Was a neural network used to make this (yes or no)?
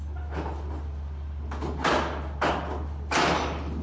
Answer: no